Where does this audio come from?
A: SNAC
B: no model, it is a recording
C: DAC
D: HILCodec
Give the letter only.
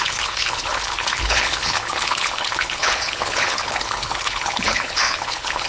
D